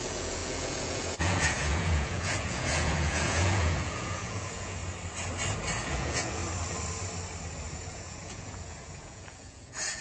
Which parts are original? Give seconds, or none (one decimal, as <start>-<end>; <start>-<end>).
4.8-5.9; 6.4-7.7